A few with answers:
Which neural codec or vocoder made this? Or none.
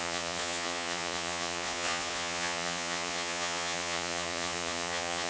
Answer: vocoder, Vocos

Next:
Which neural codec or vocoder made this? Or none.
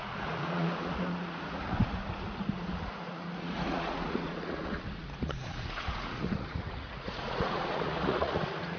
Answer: vocoder, Vocos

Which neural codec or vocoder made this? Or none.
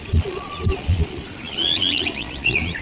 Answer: vocoder, Vocos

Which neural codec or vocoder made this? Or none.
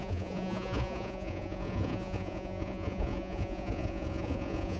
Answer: vocoder, Vocos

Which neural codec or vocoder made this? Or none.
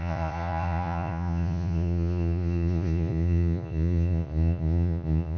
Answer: vocoder, Vocos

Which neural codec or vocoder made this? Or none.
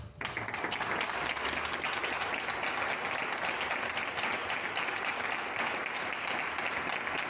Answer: none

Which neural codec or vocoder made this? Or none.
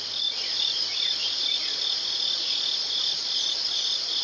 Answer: none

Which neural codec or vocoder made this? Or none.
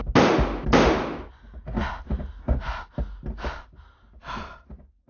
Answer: none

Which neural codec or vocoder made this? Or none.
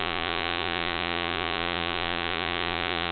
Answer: vocoder, Vocos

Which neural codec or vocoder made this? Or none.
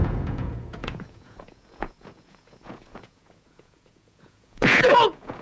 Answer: vocoder, Vocos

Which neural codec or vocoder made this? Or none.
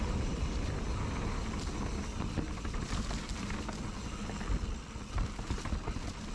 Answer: none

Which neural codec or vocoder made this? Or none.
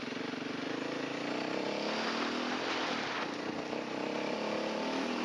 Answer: none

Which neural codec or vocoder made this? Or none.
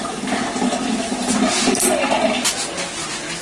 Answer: none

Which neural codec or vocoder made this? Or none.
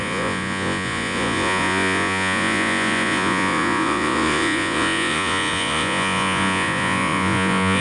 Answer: vocoder, Vocos